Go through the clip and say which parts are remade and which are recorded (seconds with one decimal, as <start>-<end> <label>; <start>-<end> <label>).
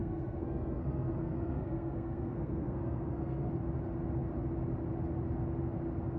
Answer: 0.0-3.5 remade; 3.5-6.2 recorded